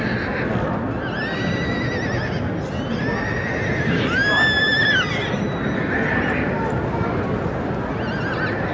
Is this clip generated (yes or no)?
no